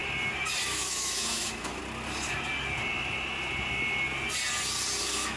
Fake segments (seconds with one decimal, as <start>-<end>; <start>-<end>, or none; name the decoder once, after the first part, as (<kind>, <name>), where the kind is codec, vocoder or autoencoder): 0.6-1.8 (autoencoder, DAC-VAE); 5.0-5.4